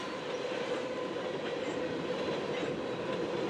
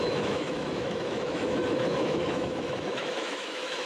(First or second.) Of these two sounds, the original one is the first